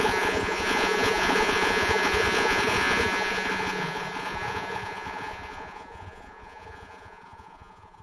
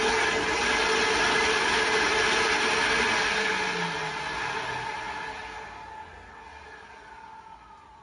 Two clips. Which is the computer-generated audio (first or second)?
first